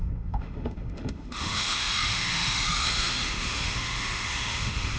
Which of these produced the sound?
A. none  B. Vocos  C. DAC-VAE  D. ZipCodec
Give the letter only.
C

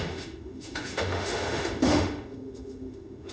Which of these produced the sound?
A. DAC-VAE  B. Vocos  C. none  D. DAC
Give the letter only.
A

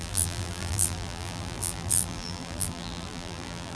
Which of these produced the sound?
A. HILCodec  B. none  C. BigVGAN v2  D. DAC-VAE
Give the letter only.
C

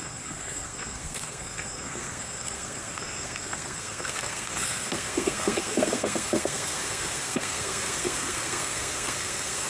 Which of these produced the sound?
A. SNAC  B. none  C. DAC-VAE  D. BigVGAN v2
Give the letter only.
A